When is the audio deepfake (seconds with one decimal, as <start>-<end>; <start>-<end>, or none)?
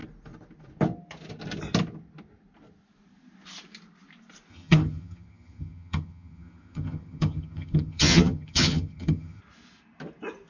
4.5-9.4